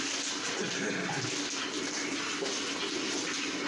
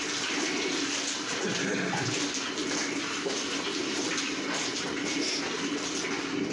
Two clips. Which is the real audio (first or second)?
first